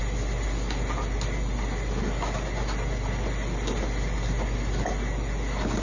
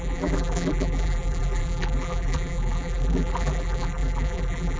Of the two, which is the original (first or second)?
first